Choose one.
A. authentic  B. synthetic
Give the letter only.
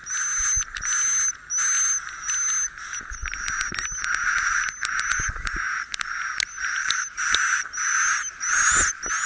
A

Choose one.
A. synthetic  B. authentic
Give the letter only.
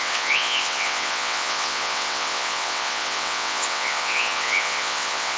A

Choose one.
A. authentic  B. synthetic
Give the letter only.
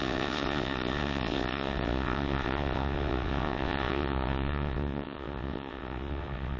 B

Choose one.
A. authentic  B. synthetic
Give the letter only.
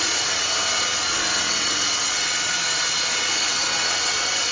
B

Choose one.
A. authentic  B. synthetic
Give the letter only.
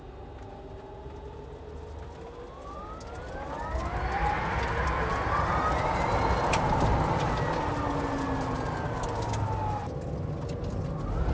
A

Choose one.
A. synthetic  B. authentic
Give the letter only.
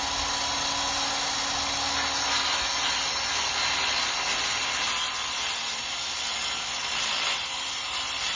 B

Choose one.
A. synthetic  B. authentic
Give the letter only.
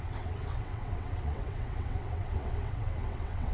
A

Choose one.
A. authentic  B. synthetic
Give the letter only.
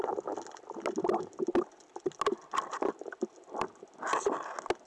A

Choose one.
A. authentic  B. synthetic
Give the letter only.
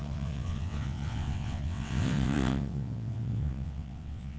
B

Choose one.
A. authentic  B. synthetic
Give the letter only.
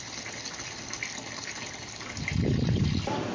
A